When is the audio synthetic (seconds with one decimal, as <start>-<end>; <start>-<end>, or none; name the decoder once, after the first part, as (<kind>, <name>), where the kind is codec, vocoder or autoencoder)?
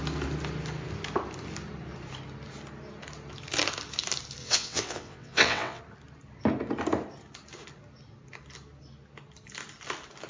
4.4-5.8 (vocoder, WaveNeXt)